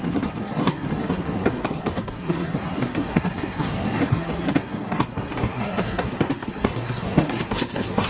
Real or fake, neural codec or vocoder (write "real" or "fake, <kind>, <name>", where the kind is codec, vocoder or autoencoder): fake, codec, SNAC